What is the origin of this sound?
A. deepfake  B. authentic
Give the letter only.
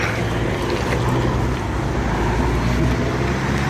B